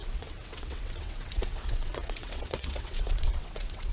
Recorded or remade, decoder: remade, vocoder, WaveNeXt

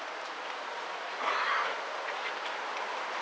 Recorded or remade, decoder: recorded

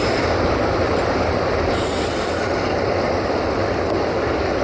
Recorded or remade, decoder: recorded